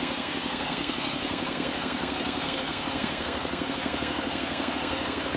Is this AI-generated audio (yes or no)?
yes